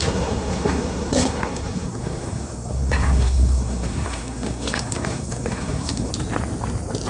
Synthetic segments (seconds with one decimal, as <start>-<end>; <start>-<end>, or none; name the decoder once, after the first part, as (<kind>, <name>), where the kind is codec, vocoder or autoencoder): 0.0-6.1 (codec, SNAC)